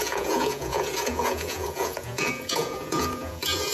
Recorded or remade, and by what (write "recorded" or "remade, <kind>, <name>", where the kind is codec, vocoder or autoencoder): remade, vocoder, Vocos